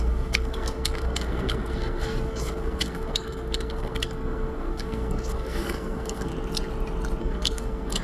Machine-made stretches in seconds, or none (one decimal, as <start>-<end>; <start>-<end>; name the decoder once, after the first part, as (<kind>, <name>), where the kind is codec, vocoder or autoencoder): 0.0-6.3 (codec, SNAC); 7.2-8.0